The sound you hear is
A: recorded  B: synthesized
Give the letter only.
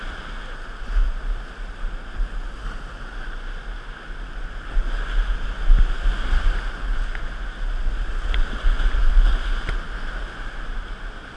A